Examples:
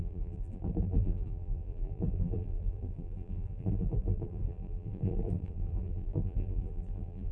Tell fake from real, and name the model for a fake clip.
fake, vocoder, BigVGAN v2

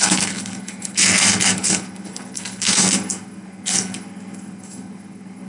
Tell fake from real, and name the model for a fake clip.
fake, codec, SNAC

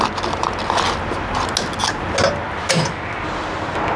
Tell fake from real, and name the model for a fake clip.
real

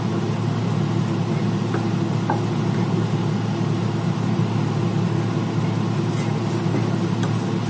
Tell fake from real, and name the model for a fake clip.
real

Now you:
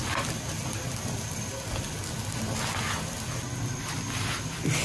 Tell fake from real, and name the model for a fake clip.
real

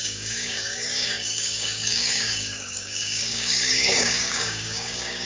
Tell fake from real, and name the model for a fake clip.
fake, codec, DAC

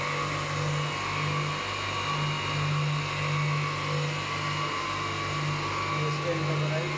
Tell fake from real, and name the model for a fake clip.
real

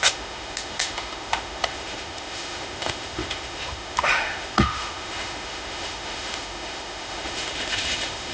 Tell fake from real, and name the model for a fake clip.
fake, autoencoder, DAC-VAE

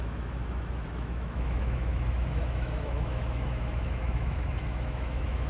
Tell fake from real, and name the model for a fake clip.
fake, autoencoder, DAC-VAE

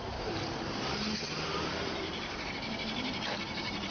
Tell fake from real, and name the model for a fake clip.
fake, vocoder, BigVGAN v2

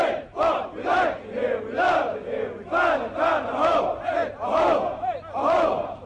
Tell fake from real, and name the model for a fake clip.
real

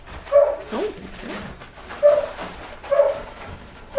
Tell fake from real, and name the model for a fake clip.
fake, vocoder, BigVGAN v2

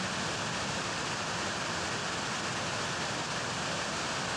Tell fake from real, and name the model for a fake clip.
real